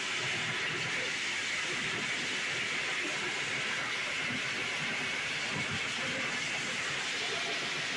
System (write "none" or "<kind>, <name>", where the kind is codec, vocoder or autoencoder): none